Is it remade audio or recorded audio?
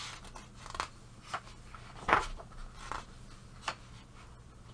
recorded